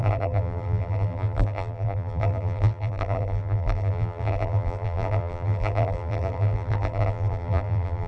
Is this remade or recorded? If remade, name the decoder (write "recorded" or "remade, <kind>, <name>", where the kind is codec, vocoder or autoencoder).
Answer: remade, vocoder, BigVGAN v2